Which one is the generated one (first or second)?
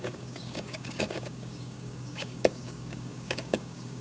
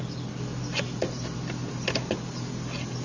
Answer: first